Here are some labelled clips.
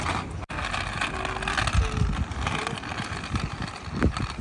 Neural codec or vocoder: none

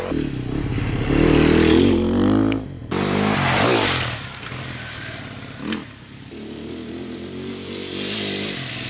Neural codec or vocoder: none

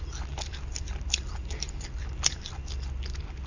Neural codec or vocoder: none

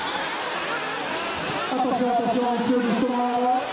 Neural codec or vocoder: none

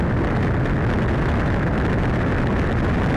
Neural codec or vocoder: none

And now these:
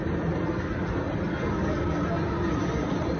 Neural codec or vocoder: none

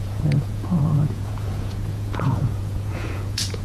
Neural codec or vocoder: vocoder, Vocos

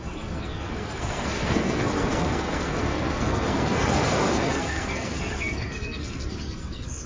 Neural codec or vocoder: codec, SNAC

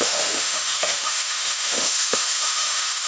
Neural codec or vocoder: autoencoder, DAC-VAE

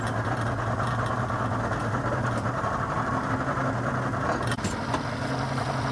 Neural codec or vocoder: none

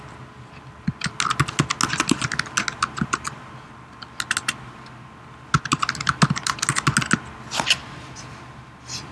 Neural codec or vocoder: none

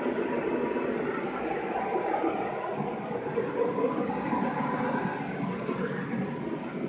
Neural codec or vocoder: none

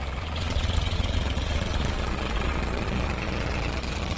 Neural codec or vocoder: vocoder, Vocos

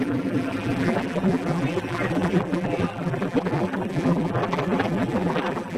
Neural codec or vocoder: vocoder, BigVGAN v2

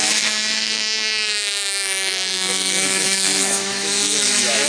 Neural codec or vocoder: autoencoder, DAC-VAE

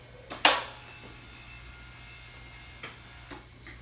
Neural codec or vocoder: none